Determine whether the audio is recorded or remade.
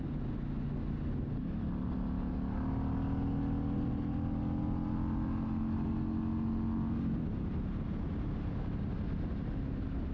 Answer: recorded